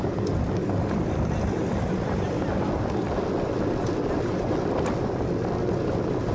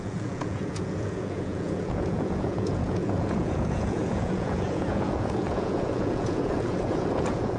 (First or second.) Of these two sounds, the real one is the first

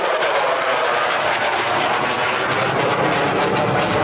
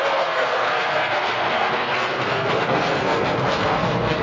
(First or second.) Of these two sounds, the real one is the first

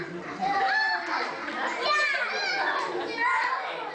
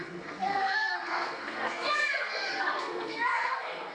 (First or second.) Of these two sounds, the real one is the first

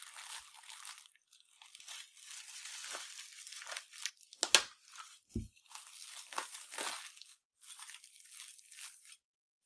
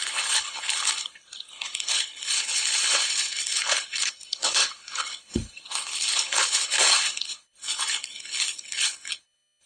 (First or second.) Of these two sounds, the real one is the first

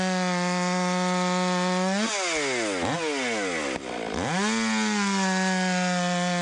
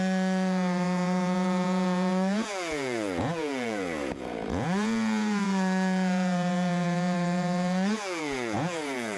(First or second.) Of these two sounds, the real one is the first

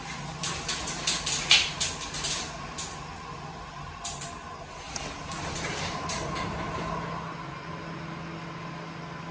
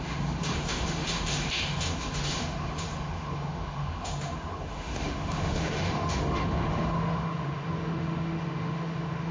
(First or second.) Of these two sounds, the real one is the first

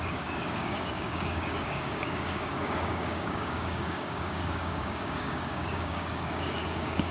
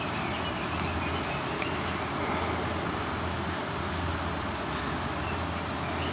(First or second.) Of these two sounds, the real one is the second